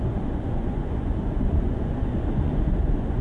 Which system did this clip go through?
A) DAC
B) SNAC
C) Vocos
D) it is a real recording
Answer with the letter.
C